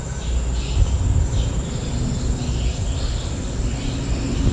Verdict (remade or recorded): recorded